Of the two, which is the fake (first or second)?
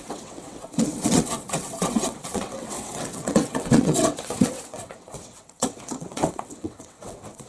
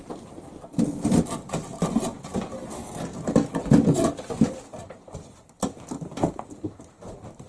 first